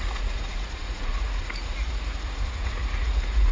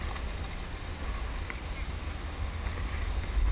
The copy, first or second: first